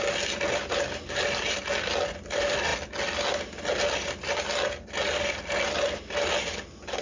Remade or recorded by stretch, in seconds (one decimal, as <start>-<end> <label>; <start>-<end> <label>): 0.0-7.0 recorded